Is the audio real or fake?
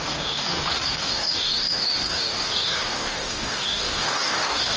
fake